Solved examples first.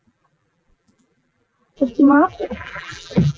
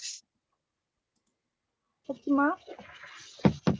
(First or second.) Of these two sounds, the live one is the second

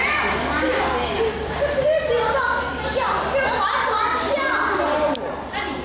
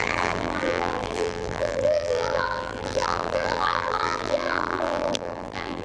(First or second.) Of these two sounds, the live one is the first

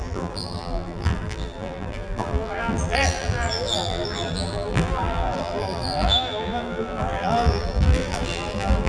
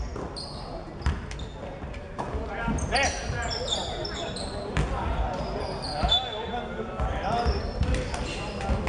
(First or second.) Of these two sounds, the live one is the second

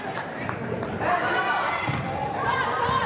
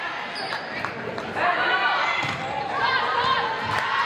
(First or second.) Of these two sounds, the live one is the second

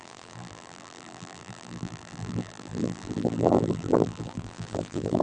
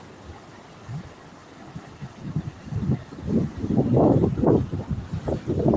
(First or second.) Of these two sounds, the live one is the second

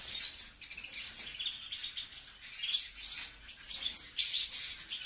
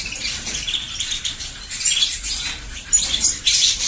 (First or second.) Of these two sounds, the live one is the first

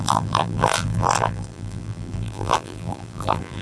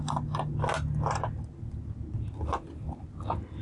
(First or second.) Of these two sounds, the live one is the second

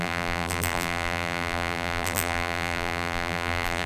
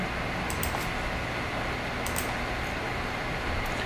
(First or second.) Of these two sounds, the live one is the second